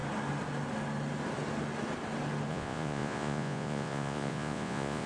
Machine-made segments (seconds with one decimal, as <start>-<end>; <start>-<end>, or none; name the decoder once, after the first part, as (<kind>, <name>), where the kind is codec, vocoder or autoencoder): 2.5-5.1 (vocoder, Vocos)